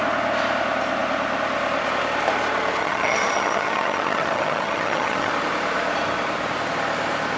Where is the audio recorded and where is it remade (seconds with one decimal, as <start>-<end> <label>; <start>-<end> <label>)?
0.0-2.8 recorded; 2.8-5.3 remade; 5.3-7.4 recorded

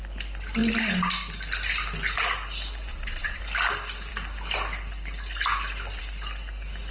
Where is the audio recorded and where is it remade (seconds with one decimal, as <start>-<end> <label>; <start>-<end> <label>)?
0.0-2.9 recorded; 2.9-3.4 remade; 3.4-6.9 recorded

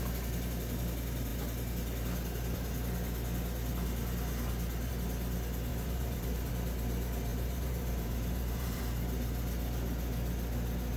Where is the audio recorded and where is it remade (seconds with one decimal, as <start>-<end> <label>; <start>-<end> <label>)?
0.0-5.7 recorded; 5.7-6.5 remade; 6.5-7.3 recorded; 7.3-8.8 remade; 8.8-11.0 recorded

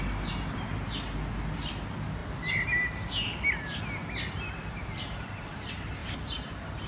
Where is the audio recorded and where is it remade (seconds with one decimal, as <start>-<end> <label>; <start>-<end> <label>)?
0.0-6.9 recorded